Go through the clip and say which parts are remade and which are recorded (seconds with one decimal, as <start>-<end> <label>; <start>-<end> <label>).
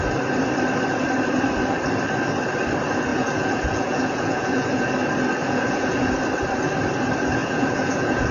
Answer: 0.0-3.1 recorded; 3.1-4.9 remade; 4.9-5.4 recorded; 5.4-6.1 remade; 6.1-7.4 recorded; 7.4-8.3 remade